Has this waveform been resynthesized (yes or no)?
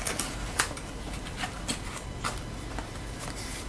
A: no